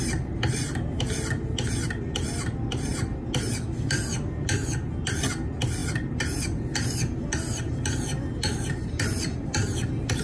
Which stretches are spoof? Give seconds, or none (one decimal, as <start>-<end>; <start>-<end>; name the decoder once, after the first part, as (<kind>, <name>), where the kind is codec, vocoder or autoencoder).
none